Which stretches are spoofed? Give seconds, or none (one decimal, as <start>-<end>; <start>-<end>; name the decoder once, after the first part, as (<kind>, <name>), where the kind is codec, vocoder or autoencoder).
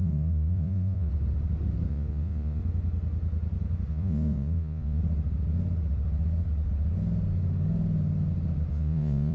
0.0-1.1 (vocoder, Vocos); 1.9-2.6; 3.9-5.0; 8.7-9.3